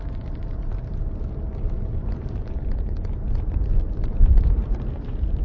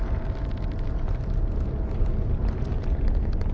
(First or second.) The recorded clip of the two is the second